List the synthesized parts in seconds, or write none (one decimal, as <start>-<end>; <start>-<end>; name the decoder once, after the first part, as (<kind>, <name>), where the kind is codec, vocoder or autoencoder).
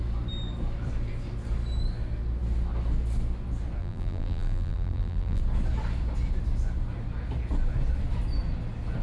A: 3.8-5.4 (vocoder, BigVGAN v2)